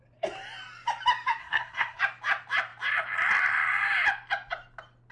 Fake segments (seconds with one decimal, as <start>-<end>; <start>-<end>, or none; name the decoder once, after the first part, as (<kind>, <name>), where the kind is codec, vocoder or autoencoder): 1.4-2.0 (codec, SNAC)